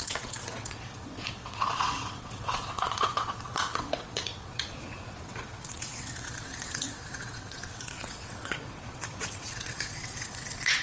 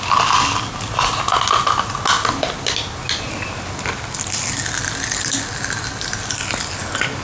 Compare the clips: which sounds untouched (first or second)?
second